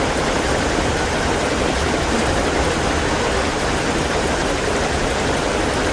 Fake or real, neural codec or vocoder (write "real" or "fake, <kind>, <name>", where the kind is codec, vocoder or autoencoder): real